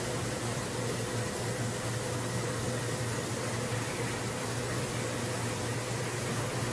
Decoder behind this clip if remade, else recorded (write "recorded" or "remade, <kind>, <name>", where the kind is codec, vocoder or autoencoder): recorded